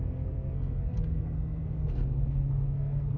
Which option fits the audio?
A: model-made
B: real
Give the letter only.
A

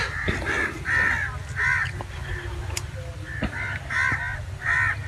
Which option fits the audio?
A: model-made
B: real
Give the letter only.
A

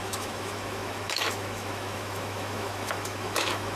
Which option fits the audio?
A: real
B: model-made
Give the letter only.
B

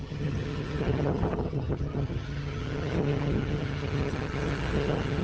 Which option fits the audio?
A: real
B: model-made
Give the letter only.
B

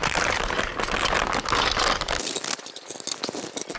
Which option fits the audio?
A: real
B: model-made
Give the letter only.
A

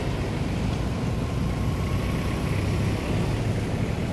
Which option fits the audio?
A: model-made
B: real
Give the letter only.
B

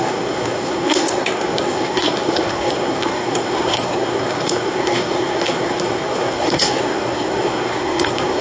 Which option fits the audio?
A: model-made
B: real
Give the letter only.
A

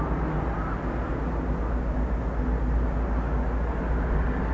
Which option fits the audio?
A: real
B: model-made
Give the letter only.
A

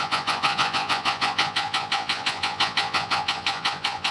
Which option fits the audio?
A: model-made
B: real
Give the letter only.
A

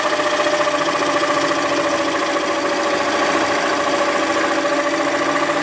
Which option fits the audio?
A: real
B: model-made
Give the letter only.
A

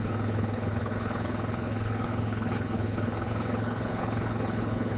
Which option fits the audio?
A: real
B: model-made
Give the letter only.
B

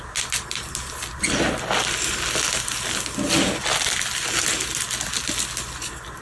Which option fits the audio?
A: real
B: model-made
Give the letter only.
A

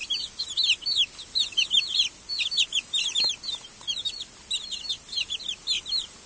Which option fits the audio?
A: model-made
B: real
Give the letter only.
B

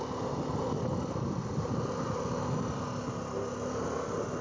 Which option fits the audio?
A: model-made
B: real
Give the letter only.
B